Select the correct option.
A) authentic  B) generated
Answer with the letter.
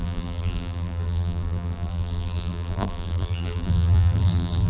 B